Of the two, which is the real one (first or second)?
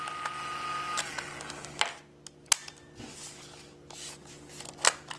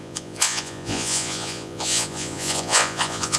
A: first